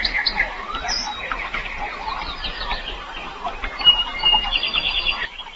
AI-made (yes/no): yes